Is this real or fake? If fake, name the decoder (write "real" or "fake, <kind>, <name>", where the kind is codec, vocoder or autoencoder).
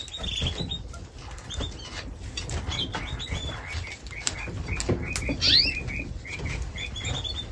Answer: real